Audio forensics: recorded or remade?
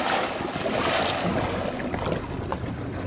recorded